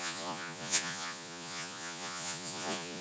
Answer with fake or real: fake